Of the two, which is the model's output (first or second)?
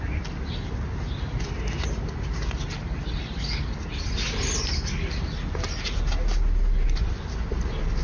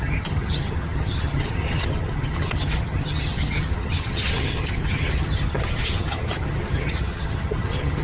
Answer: second